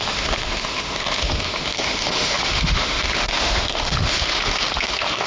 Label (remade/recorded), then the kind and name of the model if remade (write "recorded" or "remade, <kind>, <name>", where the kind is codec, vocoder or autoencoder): remade, autoencoder, DAC-VAE